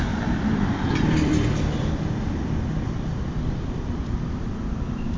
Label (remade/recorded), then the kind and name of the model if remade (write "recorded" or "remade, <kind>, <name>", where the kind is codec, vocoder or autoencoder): remade, vocoder, BigVGAN v2